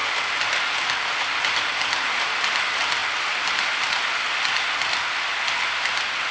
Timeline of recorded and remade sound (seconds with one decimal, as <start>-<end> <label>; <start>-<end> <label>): 0.0-6.3 recorded